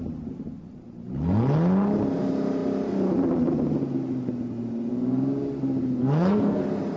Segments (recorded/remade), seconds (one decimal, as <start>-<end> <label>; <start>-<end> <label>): 0.0-6.0 recorded; 6.0-6.6 remade; 6.6-7.0 recorded